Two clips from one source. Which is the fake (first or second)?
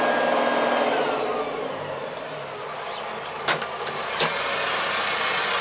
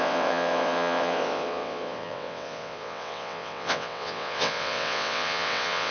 second